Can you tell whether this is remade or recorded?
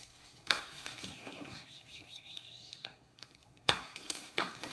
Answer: remade